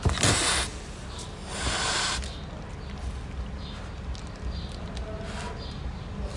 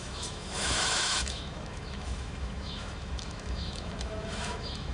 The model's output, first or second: second